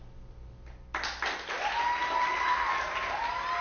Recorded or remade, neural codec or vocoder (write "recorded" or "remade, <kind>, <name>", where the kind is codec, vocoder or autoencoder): recorded